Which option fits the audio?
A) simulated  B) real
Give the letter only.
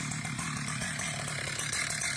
A